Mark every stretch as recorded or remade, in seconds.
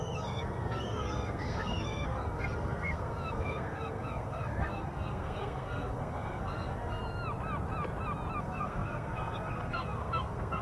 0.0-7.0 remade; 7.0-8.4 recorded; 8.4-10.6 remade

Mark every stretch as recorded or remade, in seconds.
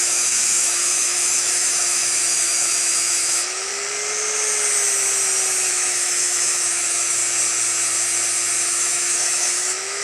0.0-3.7 remade; 3.7-5.7 recorded; 5.7-7.2 remade; 7.2-8.6 recorded; 8.6-10.0 remade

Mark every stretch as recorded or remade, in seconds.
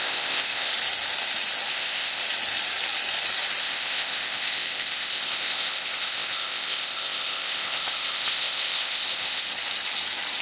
0.0-0.7 remade; 0.7-1.7 recorded; 1.7-2.2 remade; 2.2-3.6 recorded; 3.6-9.5 remade; 9.5-10.4 recorded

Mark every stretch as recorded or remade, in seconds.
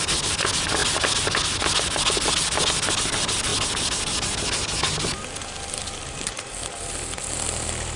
0.0-8.0 recorded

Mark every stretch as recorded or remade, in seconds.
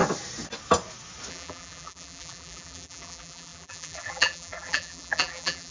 0.0-1.3 recorded; 1.3-5.7 remade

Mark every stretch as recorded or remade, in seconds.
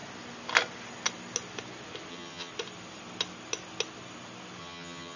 0.0-2.1 recorded; 2.1-2.5 remade; 2.5-4.6 recorded; 4.6-5.2 remade